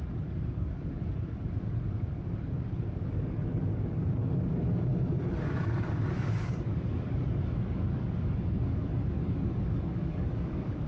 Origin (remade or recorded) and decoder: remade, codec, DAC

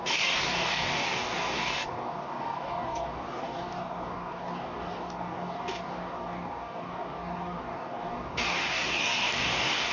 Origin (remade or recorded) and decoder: remade, codec, DAC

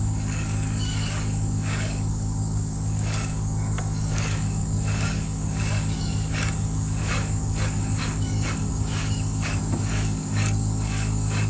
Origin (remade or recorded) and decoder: remade, codec, DAC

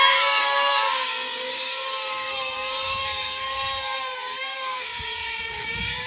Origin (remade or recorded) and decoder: remade, codec, DAC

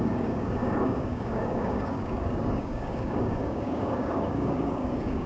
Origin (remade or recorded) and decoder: remade, codec, DAC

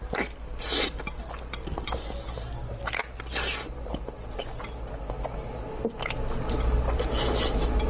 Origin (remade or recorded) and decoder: recorded